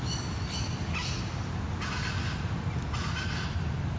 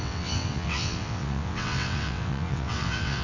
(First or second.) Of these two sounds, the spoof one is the second